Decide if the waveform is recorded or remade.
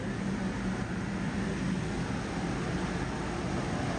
recorded